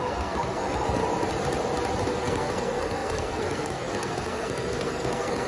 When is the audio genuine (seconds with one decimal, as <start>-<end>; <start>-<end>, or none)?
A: 1.0-2.2